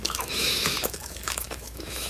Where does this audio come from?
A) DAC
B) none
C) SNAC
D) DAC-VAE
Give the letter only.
D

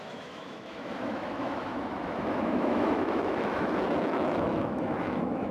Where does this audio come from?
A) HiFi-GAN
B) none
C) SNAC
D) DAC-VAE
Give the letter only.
D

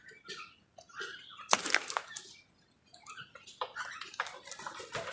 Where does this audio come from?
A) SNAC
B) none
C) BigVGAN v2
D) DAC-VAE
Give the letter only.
B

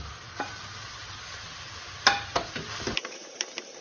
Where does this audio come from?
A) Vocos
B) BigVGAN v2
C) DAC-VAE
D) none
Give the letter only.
D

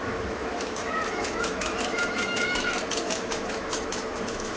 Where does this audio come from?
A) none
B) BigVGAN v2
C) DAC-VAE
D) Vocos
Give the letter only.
C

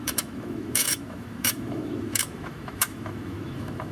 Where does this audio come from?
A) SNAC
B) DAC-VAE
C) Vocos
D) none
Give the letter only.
B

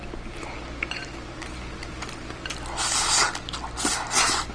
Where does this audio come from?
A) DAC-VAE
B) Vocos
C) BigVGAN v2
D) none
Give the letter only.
D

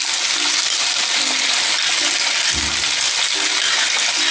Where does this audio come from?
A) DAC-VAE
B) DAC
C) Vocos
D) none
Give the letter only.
D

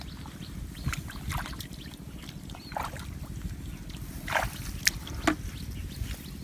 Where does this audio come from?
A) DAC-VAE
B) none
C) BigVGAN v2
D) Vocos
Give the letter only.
B